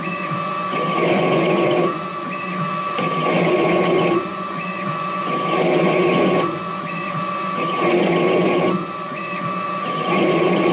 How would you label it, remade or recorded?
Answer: remade